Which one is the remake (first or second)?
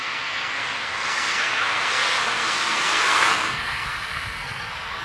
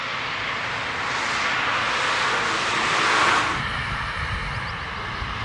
first